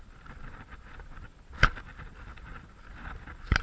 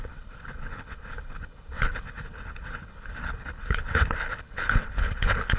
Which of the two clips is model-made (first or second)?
second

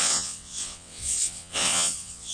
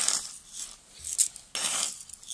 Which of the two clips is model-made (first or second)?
first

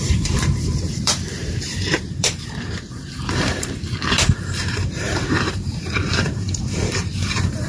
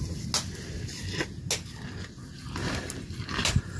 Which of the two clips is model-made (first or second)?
first